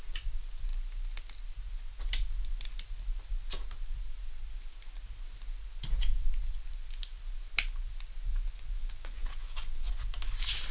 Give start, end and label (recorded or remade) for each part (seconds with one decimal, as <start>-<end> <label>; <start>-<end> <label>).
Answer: 0.0-8.3 recorded; 8.3-9.9 remade; 9.9-10.7 recorded